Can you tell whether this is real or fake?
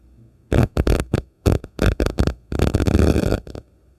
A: fake